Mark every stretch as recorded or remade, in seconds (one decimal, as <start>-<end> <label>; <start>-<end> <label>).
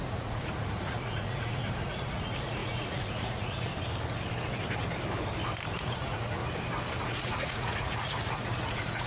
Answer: 0.0-3.7 remade; 3.7-5.8 recorded; 5.8-6.4 remade; 6.4-7.0 recorded; 7.0-9.1 remade